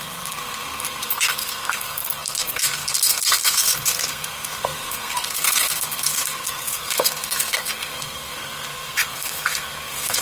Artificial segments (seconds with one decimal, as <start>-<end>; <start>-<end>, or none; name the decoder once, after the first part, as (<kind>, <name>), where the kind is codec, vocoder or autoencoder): 0.0-10.2 (codec, SNAC)